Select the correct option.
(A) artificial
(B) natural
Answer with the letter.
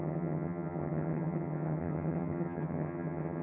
A